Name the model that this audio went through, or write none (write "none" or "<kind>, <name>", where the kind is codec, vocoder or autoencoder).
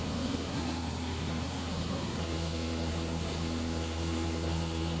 codec, SNAC